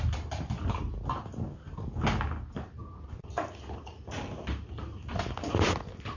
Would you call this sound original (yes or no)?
yes